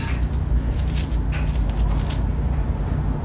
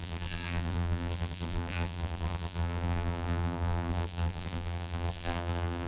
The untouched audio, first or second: first